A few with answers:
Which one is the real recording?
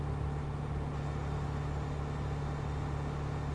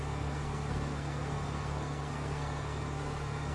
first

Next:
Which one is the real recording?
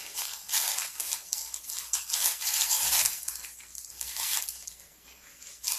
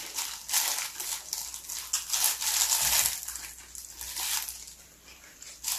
second